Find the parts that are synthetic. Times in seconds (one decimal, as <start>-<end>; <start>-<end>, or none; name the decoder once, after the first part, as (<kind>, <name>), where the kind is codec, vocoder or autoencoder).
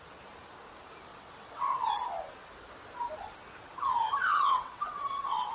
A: 1.1-1.9 (vocoder, WaveNeXt); 4.2-5.5